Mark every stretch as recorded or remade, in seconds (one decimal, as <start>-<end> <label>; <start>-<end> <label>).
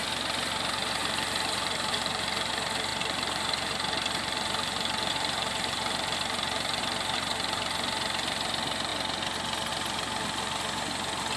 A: 0.0-1.0 recorded; 1.0-2.5 remade; 2.5-2.9 recorded; 2.9-6.8 remade; 6.8-11.4 recorded